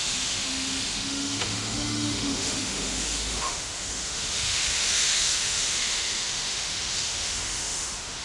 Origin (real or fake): fake